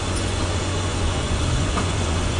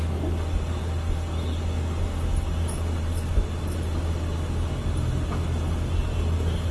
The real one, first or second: second